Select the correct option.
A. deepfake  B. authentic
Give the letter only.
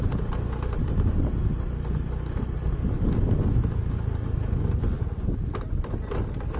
B